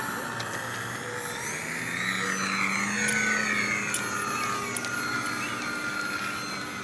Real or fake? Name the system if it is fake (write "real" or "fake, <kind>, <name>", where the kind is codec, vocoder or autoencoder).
real